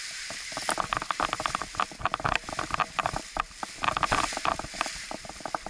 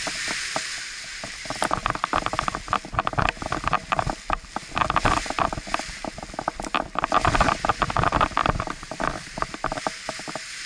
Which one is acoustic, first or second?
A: second